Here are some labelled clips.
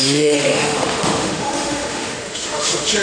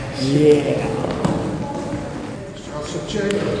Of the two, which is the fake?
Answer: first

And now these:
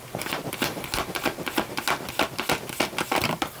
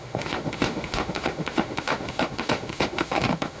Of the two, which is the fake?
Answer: second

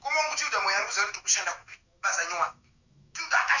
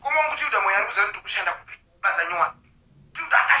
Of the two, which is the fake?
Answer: first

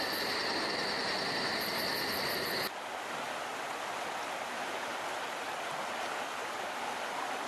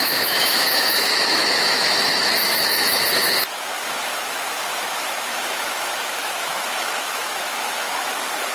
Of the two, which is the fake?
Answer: second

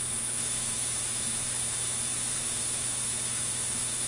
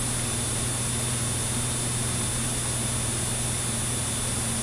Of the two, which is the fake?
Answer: first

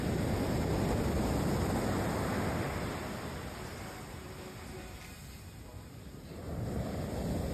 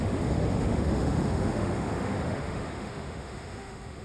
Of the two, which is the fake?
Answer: second